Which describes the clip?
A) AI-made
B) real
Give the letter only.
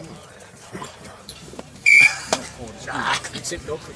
A